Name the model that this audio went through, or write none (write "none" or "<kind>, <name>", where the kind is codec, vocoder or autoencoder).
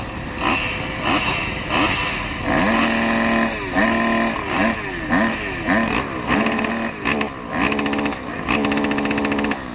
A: none